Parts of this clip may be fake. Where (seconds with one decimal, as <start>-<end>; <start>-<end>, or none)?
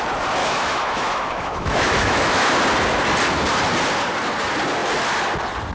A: 0.4-2.5